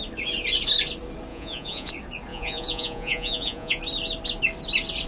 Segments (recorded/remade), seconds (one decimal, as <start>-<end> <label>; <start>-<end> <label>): 0.0-1.3 recorded; 1.3-1.9 remade; 1.9-2.3 recorded; 2.3-3.8 remade; 3.8-5.1 recorded